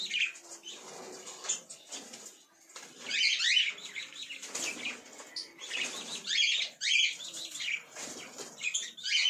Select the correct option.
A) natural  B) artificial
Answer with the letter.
A